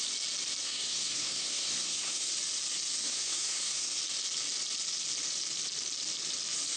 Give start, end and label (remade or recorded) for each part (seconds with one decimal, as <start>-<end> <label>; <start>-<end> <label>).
0.0-0.6 recorded; 0.6-2.3 remade; 2.3-3.0 recorded; 3.0-4.0 remade; 4.0-6.8 recorded